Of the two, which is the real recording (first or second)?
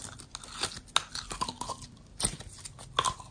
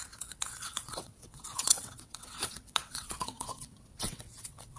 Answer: first